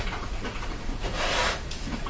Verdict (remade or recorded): remade